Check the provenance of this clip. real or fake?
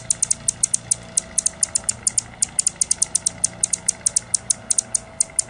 real